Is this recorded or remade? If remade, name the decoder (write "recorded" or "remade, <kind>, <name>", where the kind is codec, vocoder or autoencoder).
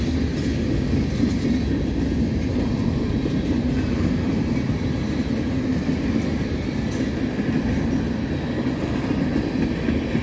recorded